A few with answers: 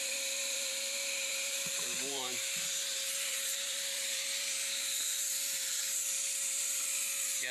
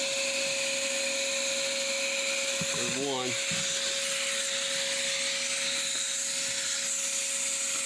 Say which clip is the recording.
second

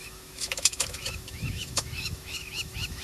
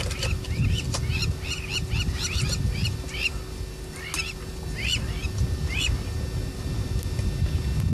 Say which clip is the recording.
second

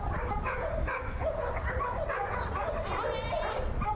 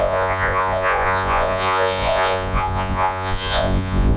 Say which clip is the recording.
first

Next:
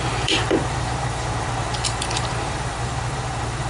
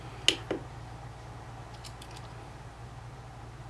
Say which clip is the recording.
second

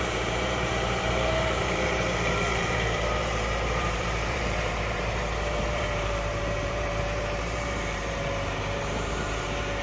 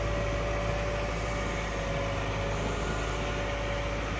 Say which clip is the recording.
second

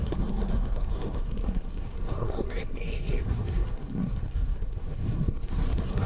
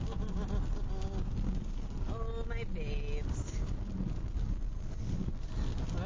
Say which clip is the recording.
second